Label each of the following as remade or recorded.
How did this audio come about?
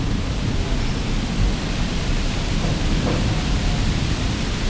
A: recorded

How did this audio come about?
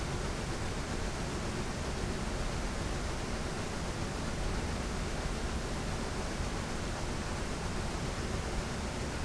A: recorded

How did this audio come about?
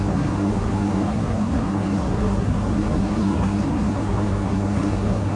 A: remade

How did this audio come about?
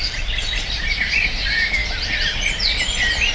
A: recorded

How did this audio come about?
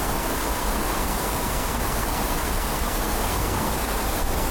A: remade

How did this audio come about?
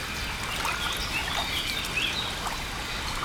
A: recorded